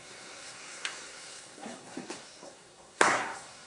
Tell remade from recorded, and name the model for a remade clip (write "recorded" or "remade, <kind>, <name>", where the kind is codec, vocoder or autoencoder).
remade, codec, SNAC